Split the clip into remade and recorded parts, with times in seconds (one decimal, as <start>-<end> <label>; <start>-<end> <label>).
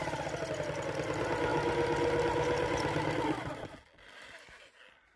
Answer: 0.0-5.2 recorded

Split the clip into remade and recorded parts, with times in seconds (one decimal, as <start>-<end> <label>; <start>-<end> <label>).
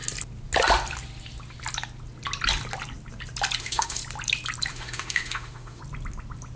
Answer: 0.0-3.6 recorded; 3.6-4.0 remade; 4.0-4.7 recorded; 4.7-5.8 remade; 5.8-6.6 recorded